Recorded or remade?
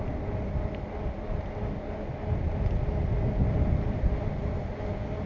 recorded